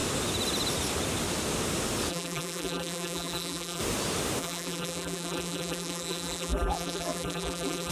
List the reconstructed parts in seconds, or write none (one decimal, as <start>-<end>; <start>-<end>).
2.1-3.8; 4.4-7.9

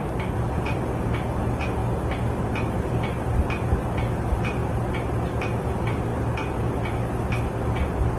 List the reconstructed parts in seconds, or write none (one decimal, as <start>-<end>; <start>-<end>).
0.0-1.8; 2.4-4.6; 5.6-6.1; 7.6-8.2

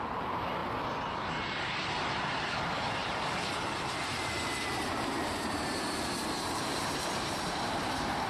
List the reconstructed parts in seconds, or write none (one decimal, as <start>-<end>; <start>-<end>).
0.0-0.6; 1.3-8.3